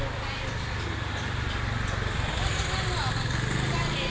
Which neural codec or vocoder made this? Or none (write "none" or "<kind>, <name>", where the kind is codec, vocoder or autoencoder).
none